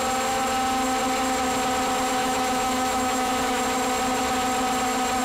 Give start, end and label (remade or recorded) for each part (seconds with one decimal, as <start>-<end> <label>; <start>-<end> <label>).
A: 0.0-2.2 recorded; 2.2-3.6 remade; 3.6-5.2 recorded